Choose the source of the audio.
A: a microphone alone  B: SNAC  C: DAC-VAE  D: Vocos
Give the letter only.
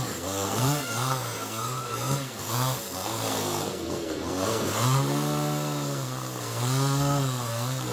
B